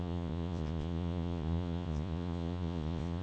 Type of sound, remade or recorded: remade